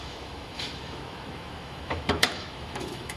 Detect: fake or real fake